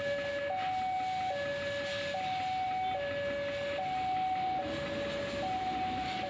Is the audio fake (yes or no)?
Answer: no